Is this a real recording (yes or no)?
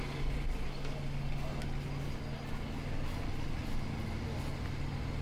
yes